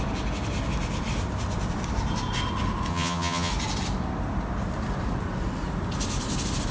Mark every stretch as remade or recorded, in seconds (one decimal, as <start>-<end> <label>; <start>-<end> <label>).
0.0-2.9 recorded; 2.9-3.5 remade; 3.5-6.7 recorded